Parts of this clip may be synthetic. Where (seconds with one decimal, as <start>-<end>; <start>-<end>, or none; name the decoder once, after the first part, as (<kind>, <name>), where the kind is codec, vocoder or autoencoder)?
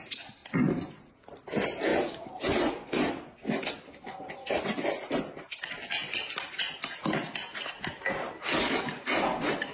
none